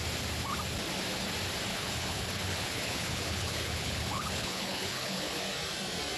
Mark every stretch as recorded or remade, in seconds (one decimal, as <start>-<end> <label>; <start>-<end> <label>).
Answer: 0.0-1.7 recorded; 1.7-5.4 remade; 5.4-6.2 recorded